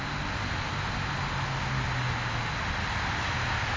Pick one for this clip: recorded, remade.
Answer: recorded